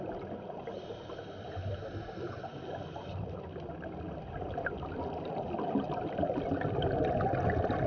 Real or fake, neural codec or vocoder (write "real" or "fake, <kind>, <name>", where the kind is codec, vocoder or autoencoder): real